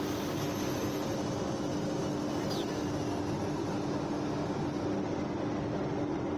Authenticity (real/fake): real